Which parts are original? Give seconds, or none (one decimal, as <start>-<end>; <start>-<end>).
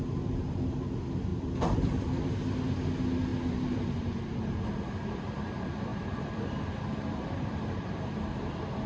0.0-1.3; 2.3-3.3; 4.4-5.9